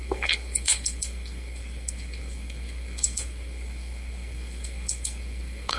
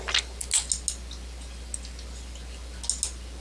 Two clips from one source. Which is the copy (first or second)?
first